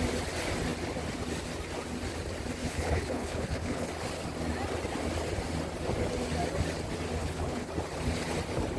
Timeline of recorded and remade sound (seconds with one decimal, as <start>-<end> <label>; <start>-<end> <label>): 0.0-2.6 recorded; 2.6-3.9 remade; 3.9-7.2 recorded; 7.2-7.7 remade; 7.7-8.8 recorded